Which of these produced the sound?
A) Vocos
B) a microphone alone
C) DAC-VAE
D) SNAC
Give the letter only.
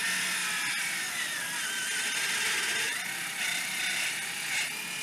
B